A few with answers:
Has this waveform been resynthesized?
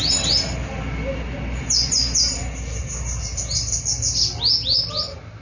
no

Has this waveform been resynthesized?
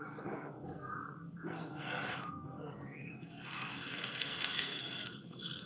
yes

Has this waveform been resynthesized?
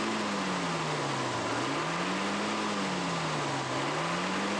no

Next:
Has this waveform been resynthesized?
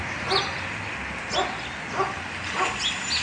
no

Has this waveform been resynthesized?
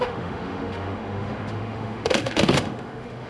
yes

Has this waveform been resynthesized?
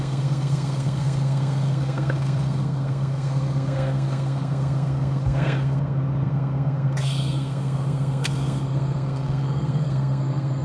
yes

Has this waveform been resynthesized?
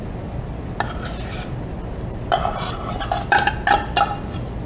no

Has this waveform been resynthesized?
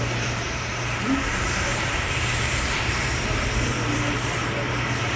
yes